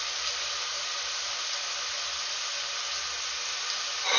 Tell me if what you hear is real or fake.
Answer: real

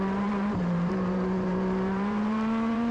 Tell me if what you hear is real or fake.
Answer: fake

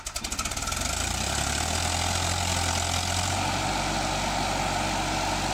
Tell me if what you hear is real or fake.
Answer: real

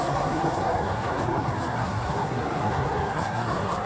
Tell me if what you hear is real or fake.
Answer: fake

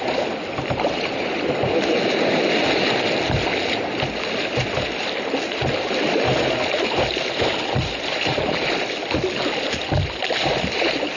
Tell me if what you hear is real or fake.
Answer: real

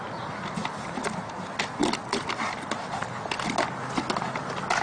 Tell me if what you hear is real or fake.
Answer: real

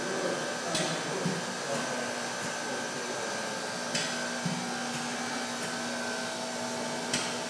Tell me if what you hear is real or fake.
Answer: real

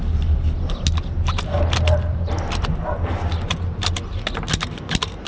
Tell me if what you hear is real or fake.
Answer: real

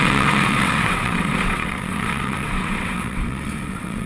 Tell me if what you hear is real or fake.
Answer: fake